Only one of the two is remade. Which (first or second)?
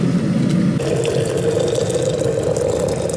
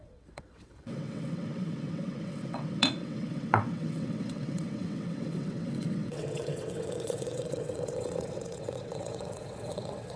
second